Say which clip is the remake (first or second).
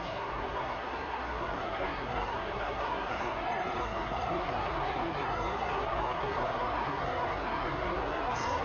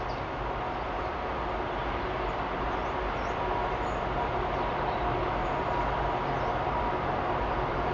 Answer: first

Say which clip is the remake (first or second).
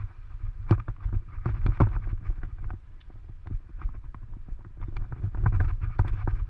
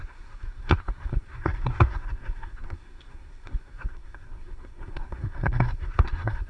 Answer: second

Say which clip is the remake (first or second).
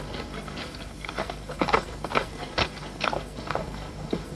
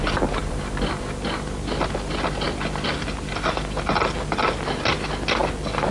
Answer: first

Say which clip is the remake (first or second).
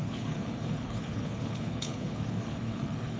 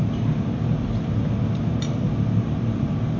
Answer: first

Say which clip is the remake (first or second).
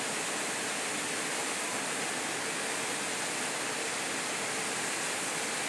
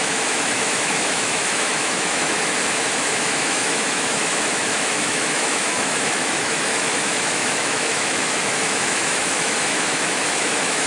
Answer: second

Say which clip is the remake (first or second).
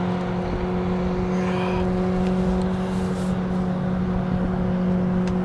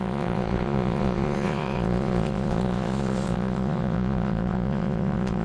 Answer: second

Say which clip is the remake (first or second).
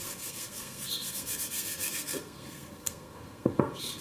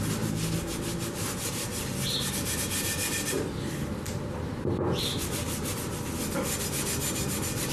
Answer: first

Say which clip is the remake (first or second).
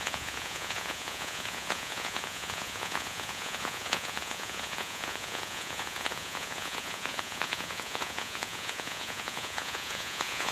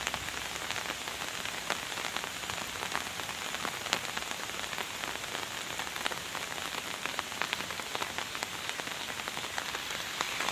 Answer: first